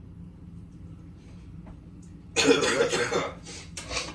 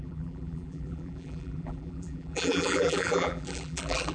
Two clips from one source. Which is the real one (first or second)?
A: first